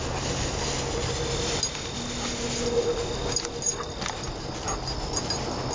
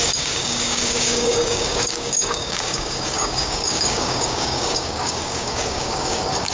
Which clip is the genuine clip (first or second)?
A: first